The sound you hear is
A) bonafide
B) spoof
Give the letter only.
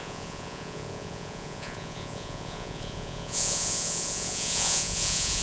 B